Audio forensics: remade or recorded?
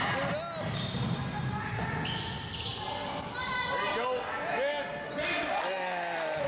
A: recorded